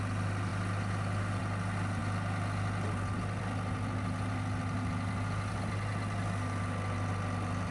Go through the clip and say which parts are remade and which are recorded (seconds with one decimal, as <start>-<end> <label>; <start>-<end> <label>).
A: 0.0-7.7 recorded